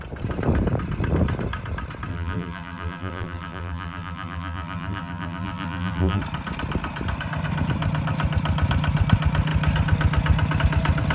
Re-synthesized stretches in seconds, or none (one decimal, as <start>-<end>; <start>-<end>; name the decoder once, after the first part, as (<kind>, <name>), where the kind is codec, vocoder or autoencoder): 2.1-6.2 (vocoder, BigVGAN v2)